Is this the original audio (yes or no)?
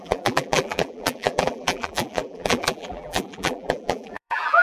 no